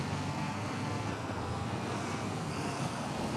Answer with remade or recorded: remade